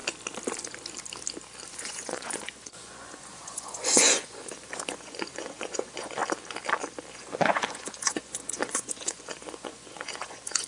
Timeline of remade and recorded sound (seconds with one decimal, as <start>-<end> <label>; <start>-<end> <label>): 0.0-1.7 recorded; 1.7-6.2 remade; 6.2-7.1 recorded; 7.1-10.7 remade